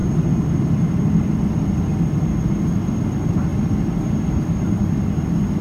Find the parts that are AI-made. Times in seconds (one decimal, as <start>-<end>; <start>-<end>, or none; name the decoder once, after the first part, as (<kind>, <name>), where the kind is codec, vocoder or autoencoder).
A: 3.0-3.5 (vocoder, BigVGAN v2); 4.3-5.6